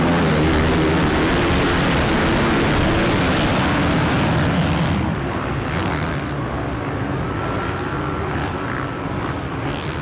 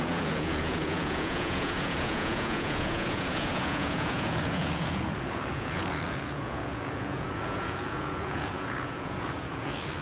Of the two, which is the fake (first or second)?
second